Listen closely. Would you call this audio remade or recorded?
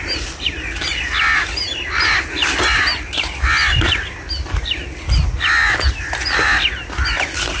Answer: recorded